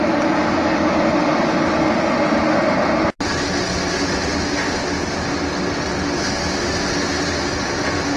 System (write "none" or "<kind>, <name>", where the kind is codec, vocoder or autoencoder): none